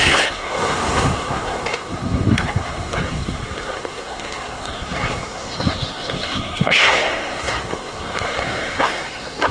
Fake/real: fake